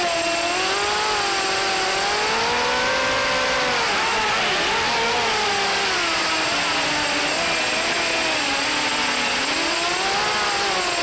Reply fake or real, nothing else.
real